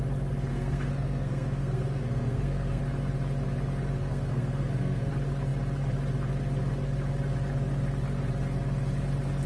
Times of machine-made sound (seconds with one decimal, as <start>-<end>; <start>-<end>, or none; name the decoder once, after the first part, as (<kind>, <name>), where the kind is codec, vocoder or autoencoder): 0.5-2.8 (codec, SNAC); 4.0-5.1